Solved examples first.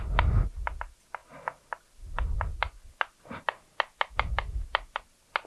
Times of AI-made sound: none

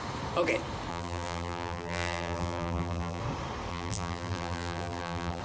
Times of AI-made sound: 0.9-3.2 (vocoder, BigVGAN v2); 3.7-5.4